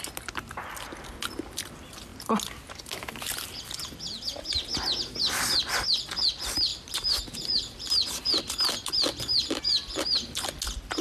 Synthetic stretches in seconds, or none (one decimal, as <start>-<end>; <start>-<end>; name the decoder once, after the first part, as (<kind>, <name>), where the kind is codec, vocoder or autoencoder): 6.7-8.4 (vocoder, BigVGAN v2)